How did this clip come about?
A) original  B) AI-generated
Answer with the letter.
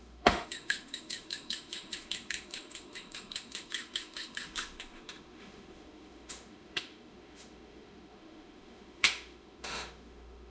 B